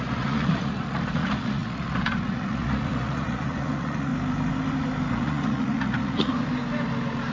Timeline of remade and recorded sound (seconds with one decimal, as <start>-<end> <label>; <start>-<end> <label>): 0.0-4.1 remade; 4.1-5.1 recorded; 5.1-6.3 remade; 6.3-7.3 recorded

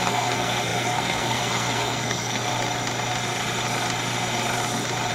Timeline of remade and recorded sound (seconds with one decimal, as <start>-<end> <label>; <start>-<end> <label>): 0.0-2.5 remade; 2.5-5.1 recorded

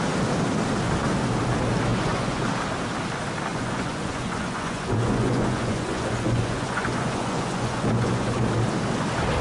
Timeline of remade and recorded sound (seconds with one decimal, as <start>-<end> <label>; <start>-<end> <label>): 0.0-1.9 recorded; 1.9-2.5 remade; 2.5-3.5 recorded; 3.5-8.4 remade; 8.4-9.4 recorded

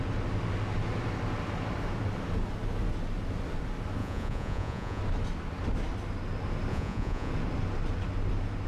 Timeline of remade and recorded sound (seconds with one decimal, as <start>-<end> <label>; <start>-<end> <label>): 0.0-4.0 recorded; 4.0-5.0 remade; 5.0-6.7 recorded; 6.7-7.3 remade; 7.3-8.7 recorded

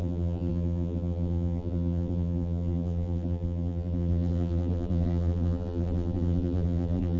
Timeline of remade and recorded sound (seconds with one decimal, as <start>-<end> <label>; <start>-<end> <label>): 0.0-7.2 remade

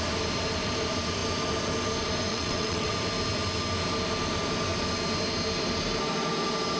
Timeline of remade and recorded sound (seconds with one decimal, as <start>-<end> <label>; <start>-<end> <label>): 0.0-2.3 recorded; 2.3-2.9 remade; 2.9-6.8 recorded